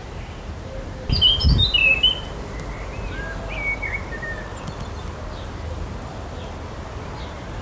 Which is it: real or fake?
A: real